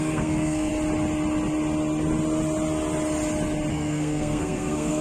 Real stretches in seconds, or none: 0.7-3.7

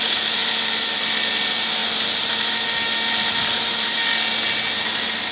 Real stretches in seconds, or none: 0.0-5.3

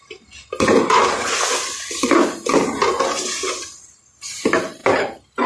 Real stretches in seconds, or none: 0.0-5.5

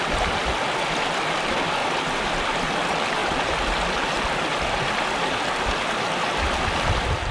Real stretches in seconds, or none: 0.0-7.3

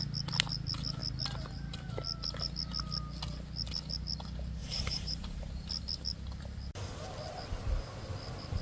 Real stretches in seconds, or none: 0.0-4.6; 5.7-8.6

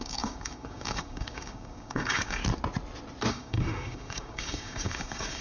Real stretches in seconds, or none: 2.4-3.3